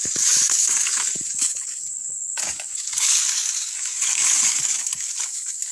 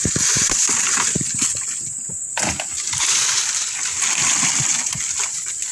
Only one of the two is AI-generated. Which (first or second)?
first